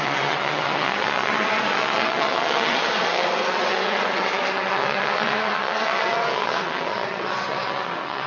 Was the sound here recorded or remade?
remade